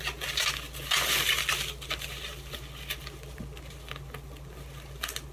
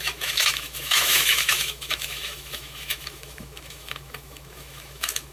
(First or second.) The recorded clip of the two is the first